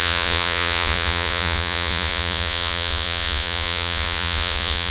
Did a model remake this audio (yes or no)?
yes